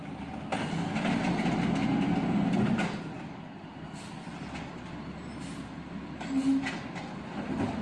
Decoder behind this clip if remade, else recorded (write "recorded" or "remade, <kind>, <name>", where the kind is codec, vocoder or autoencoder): recorded